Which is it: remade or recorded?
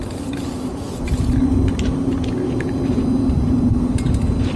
recorded